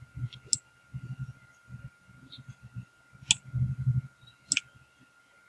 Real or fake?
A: real